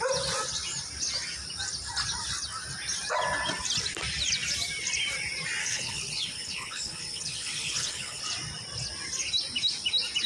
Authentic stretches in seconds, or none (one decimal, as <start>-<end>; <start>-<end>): 0.0-5.6; 8.2-10.3